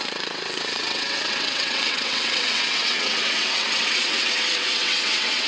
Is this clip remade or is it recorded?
remade